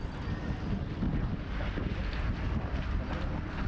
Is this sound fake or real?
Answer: real